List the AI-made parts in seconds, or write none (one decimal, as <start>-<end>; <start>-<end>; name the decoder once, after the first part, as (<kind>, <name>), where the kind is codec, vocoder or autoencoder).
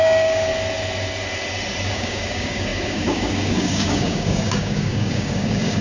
0.0-0.5 (codec, DAC); 1.9-5.8